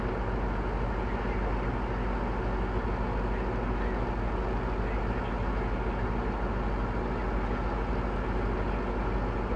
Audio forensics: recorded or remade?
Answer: recorded